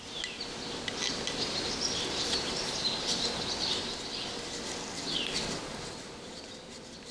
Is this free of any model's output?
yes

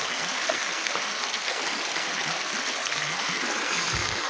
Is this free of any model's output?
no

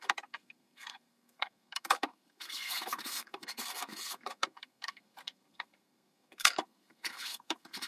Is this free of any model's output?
no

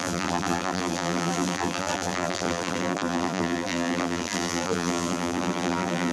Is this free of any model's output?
no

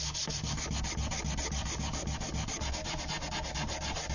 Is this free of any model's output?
yes